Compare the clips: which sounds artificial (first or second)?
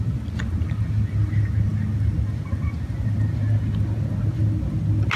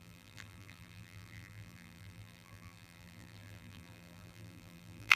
second